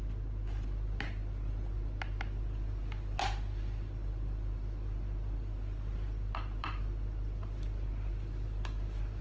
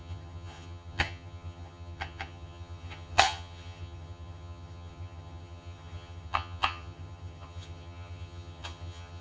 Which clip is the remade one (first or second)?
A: second